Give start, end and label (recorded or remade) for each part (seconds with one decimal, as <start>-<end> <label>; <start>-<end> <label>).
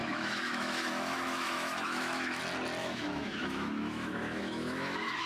0.0-2.4 remade; 2.4-2.8 recorded; 2.8-5.3 remade